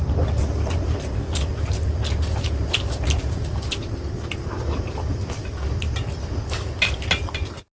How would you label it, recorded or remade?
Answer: recorded